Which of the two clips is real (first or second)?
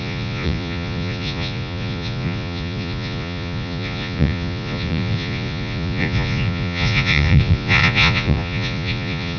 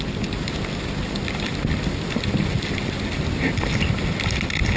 second